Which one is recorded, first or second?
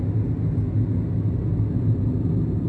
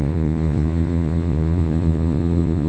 first